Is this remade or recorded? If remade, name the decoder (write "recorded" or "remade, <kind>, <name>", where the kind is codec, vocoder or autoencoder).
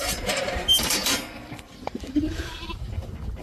remade, vocoder, BigVGAN v2